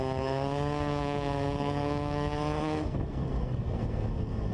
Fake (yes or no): yes